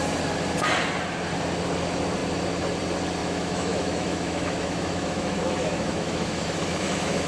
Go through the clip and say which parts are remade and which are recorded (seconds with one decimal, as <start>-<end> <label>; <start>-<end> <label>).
0.0-3.2 recorded; 3.2-7.3 remade